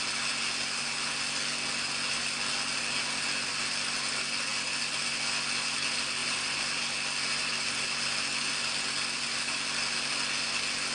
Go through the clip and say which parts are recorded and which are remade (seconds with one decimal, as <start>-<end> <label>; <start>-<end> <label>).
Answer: 0.0-6.2 recorded; 6.2-6.7 remade; 6.7-10.9 recorded